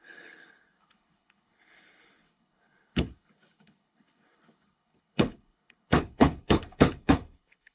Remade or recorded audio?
remade